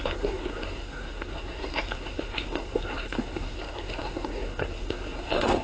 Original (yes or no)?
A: no